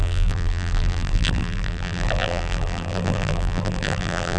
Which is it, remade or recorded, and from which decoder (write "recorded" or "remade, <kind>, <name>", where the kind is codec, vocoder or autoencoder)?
remade, vocoder, BigVGAN v2